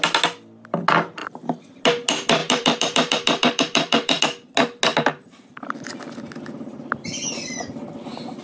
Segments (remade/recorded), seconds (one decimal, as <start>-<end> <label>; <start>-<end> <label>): 0.0-1.2 recorded; 1.2-1.8 remade; 1.8-2.4 recorded; 2.4-4.2 remade; 4.2-4.9 recorded; 4.9-6.1 remade; 6.1-8.4 recorded